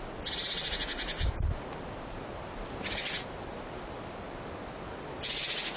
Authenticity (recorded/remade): recorded